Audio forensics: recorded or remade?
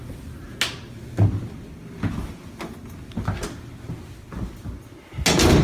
recorded